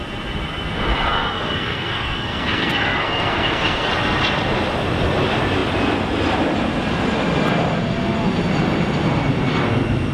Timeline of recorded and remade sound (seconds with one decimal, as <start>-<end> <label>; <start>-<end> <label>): 0.0-0.9 recorded; 0.9-3.9 remade; 3.9-10.1 recorded